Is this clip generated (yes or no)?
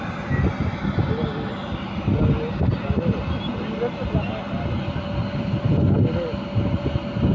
no